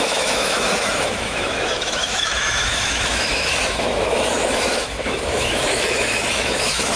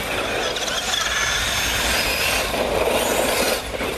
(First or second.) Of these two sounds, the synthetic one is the first